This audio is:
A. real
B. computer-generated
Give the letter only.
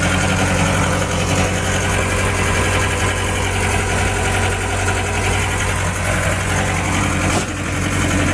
B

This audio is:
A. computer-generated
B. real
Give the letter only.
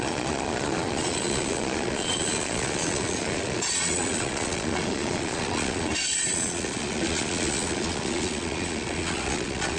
A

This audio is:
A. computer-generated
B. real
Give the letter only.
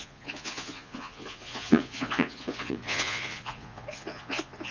A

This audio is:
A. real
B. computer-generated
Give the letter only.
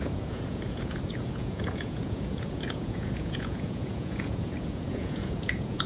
B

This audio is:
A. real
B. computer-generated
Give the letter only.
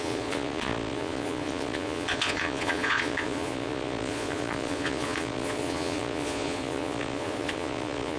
B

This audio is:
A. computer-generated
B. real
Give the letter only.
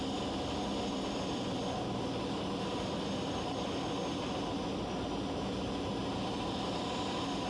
B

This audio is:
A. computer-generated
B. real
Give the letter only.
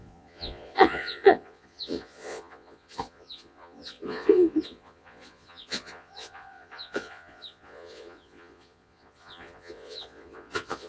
A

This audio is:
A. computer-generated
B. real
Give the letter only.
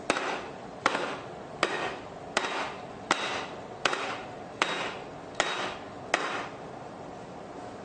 B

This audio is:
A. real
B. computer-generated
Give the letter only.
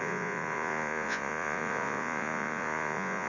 B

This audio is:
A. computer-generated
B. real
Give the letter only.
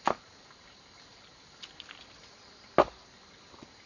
B